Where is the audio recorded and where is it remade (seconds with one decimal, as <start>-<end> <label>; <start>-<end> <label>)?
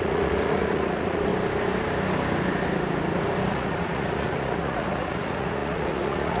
0.0-1.3 remade; 1.3-3.5 recorded; 3.5-6.4 remade